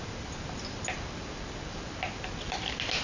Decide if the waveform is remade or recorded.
recorded